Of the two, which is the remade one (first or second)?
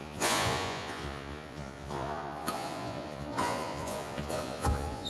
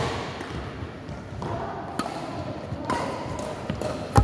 first